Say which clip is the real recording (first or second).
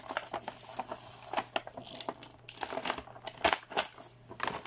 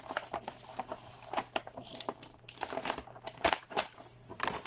first